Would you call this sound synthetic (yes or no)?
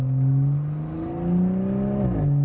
no